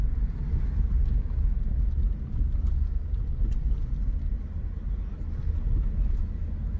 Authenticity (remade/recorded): recorded